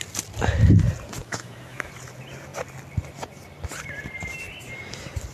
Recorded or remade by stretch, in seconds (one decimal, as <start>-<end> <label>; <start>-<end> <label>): 0.0-1.2 recorded; 1.2-1.9 remade; 1.9-5.3 recorded